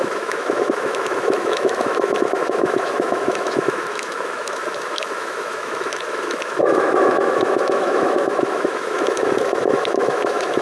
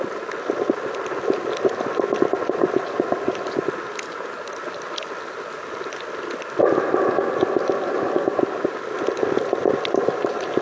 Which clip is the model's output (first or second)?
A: first